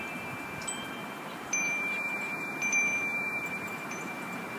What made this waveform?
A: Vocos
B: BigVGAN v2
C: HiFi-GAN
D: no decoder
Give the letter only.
B